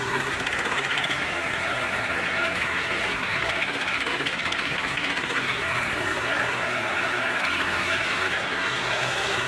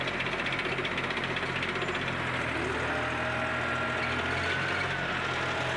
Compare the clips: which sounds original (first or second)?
second